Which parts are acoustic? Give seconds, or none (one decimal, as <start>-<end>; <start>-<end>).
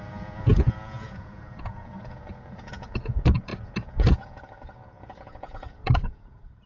none